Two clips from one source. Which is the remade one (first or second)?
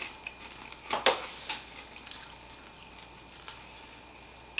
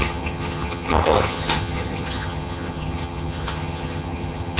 second